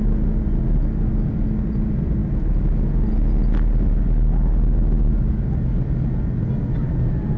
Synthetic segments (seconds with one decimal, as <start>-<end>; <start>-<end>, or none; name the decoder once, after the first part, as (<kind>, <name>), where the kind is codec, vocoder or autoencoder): none

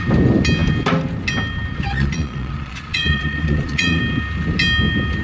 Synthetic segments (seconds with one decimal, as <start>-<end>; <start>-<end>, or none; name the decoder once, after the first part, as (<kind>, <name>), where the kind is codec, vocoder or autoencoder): 1.9-4.0 (vocoder, Vocos)

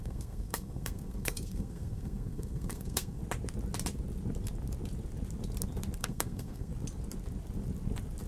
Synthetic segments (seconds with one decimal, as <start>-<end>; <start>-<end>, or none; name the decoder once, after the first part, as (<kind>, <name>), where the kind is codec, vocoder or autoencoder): 0.0-3.2 (codec, SNAC); 6.0-6.7